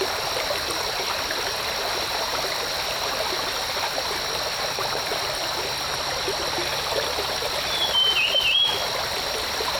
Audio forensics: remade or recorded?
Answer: recorded